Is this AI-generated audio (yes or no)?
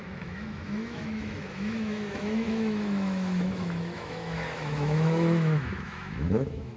yes